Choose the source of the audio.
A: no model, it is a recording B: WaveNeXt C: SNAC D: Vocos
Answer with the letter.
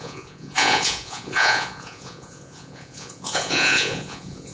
D